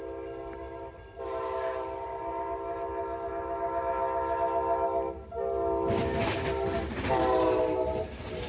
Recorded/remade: recorded